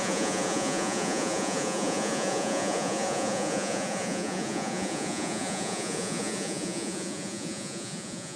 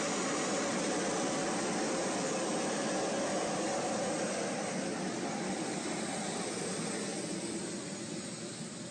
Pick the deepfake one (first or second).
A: first